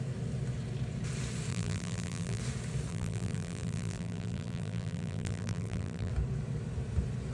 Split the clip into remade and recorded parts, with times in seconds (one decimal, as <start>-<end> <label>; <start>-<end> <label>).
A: 0.0-1.5 recorded; 1.5-2.4 remade; 2.4-2.9 recorded; 2.9-6.1 remade; 6.1-7.3 recorded